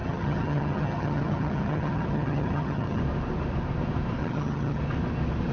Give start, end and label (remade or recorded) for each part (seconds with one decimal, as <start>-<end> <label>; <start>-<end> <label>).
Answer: 0.0-3.0 remade; 3.0-4.2 recorded; 4.2-4.8 remade; 4.8-5.5 recorded